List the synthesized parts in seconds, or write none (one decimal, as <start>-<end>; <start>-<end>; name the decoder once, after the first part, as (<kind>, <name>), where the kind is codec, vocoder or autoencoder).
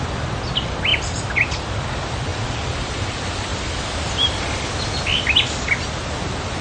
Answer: 0.9-1.8 (vocoder, BigVGAN v2); 2.3-3.1; 3.5-4.7